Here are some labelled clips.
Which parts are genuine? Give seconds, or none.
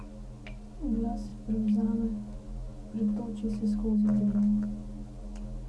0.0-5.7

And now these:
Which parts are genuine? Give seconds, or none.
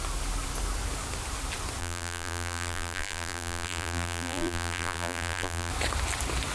0.0-1.8; 5.7-6.5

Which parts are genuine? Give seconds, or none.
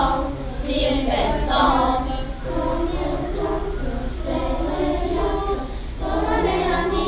0.0-7.1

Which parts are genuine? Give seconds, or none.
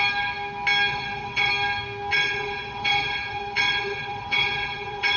0.0-0.9; 1.5-2.1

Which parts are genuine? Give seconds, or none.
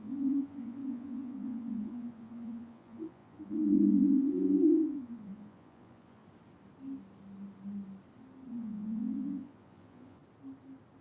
6.2-8.5; 10.2-11.0